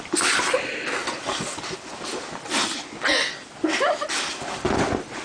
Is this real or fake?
real